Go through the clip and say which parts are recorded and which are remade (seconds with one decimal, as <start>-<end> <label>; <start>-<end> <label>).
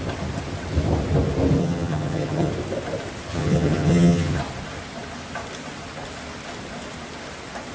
0.0-1.6 recorded; 1.6-2.5 remade; 2.5-3.3 recorded; 3.3-4.4 remade; 4.4-7.7 recorded